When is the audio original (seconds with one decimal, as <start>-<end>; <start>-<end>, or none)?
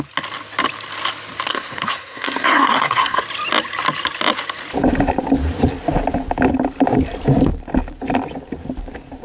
0.0-1.5; 3.2-9.2